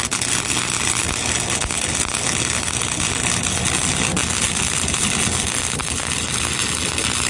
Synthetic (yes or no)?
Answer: no